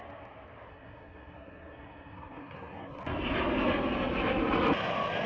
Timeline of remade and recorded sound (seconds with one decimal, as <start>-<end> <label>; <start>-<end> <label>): 0.0-0.7 recorded; 0.7-3.0 remade; 3.0-5.3 recorded